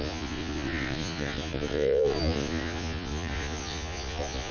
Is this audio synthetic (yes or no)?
yes